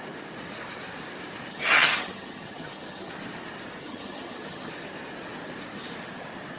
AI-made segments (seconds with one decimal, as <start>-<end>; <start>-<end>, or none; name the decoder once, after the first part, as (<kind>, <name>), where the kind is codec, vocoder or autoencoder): 1.5-3.1 (vocoder, HiFi-GAN); 3.8-4.7